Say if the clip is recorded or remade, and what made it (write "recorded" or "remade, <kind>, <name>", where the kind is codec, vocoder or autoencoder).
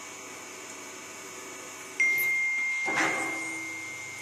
recorded